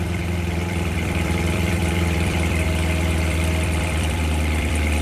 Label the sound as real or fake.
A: fake